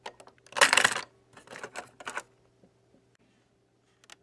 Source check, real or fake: real